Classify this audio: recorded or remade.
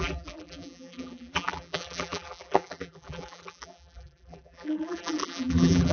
remade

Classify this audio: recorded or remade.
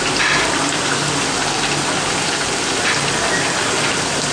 recorded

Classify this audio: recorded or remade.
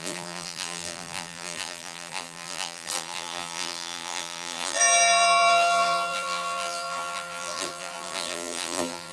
remade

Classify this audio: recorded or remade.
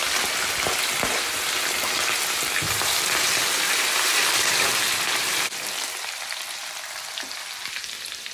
remade